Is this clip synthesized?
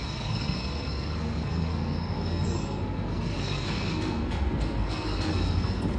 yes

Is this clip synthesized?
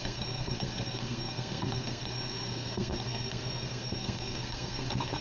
yes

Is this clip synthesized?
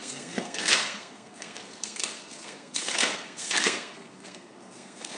yes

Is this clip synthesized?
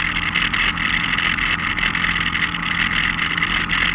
no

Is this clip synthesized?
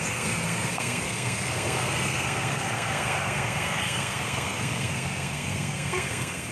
yes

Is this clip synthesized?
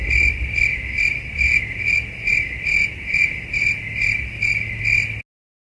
no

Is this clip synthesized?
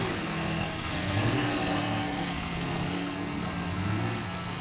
yes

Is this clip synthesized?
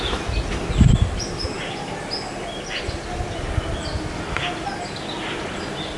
no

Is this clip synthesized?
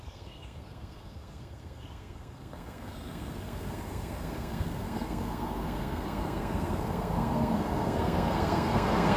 yes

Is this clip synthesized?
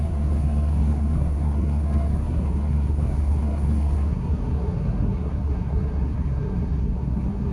yes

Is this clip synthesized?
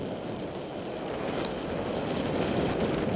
no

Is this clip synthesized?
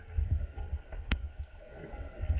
yes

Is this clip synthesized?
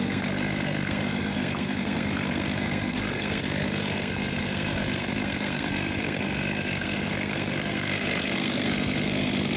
yes